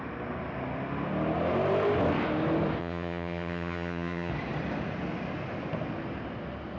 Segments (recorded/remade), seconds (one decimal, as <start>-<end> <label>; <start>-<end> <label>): 0.0-2.8 recorded; 2.8-4.3 remade; 4.3-6.8 recorded